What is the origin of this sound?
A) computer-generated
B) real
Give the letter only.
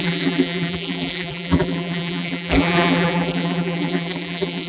A